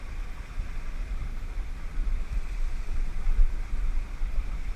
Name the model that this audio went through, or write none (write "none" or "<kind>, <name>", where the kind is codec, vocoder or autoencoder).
vocoder, BigVGAN v2